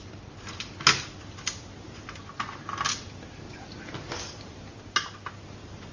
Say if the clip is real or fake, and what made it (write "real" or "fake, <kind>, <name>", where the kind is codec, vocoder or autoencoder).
real